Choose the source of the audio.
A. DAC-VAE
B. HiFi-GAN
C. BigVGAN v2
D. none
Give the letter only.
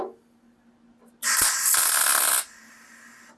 D